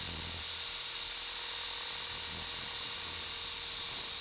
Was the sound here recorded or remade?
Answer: recorded